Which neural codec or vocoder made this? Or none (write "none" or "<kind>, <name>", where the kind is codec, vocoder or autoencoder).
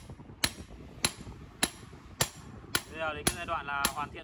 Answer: none